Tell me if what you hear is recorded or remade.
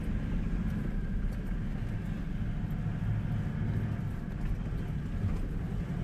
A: recorded